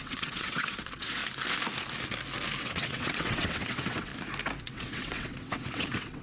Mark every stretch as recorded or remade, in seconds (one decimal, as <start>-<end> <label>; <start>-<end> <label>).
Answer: 0.0-1.2 remade; 1.2-2.6 recorded; 2.6-4.1 remade; 4.1-4.6 recorded; 4.6-6.2 remade